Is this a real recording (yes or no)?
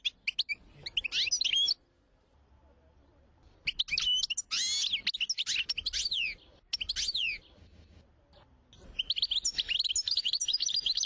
yes